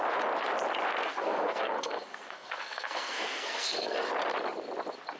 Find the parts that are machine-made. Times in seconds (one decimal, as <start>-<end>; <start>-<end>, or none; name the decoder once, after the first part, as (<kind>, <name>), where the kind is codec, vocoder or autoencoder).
1.0-4.1 (codec, SNAC)